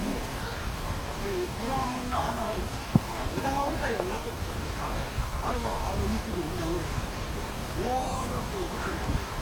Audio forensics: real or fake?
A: fake